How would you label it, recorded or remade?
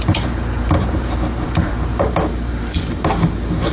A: remade